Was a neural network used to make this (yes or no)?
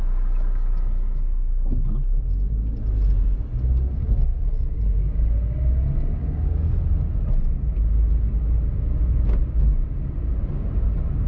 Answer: no